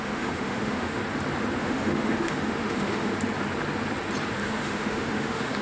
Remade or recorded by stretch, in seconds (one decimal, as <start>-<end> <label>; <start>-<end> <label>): 0.0-1.0 remade; 1.0-1.6 recorded; 1.6-3.1 remade; 3.1-4.4 recorded; 4.4-5.6 remade